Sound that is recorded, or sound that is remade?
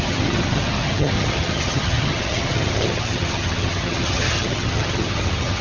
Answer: remade